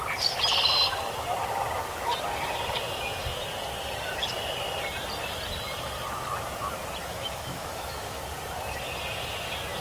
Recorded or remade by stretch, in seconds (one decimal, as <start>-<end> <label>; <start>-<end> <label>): 0.0-7.0 recorded; 7.0-8.2 remade; 8.2-9.8 recorded

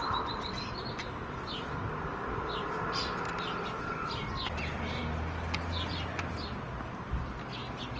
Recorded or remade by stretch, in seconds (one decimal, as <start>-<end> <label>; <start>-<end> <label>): 0.0-8.0 recorded

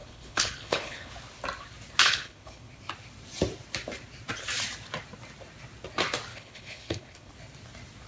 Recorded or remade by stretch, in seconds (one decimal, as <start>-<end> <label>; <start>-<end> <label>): 0.0-1.1 remade; 1.1-2.0 recorded; 2.0-2.8 remade; 2.8-6.3 recorded; 6.3-7.3 remade; 7.3-8.1 recorded

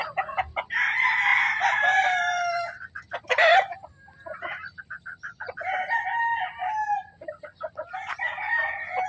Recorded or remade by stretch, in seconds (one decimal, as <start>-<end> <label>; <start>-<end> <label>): 0.0-9.1 recorded